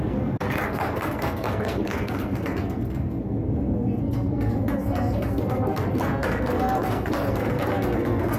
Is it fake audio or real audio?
fake